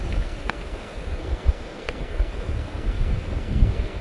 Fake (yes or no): yes